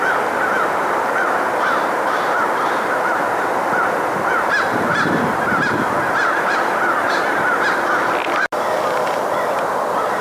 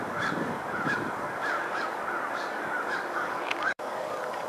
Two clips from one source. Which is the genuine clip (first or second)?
first